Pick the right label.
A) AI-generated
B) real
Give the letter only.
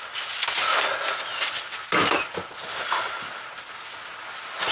B